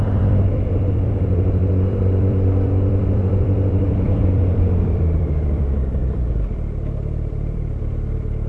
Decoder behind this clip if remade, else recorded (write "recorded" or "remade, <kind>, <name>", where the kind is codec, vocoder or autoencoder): remade, vocoder, BigVGAN v2